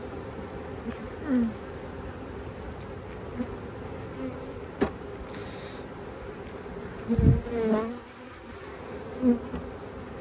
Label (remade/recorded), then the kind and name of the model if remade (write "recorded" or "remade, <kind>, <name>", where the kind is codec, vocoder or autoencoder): recorded